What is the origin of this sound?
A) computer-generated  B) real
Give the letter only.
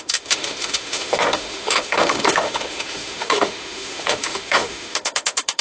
A